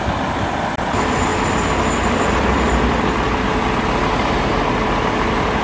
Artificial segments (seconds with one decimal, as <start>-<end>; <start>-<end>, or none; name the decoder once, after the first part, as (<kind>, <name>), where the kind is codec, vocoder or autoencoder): none